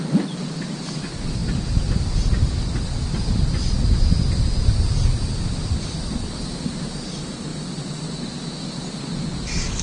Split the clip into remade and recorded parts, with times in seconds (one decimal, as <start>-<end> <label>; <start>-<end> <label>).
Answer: 0.0-9.8 recorded